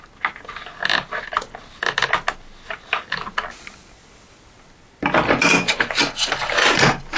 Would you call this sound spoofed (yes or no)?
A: no